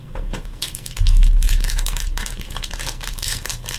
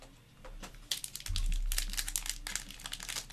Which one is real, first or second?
second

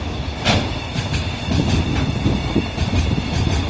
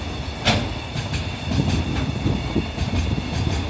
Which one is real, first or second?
second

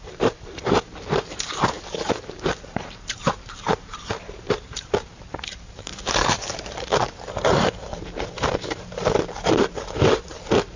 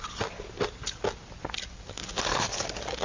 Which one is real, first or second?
second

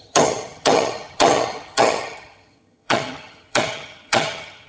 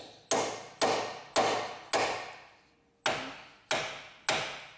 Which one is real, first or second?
second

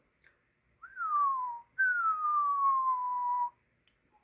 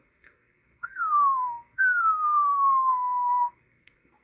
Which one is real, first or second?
first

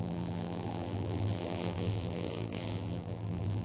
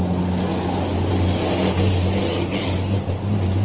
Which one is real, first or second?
second